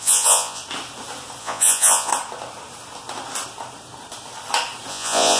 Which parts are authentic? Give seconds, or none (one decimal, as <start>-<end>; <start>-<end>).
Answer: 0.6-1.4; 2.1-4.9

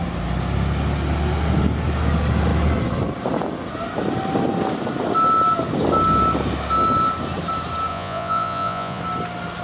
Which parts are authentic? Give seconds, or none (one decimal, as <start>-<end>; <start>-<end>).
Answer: 0.0-7.9; 9.0-9.6

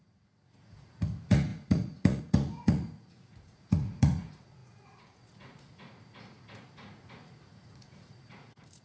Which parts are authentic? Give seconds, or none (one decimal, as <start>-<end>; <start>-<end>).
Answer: none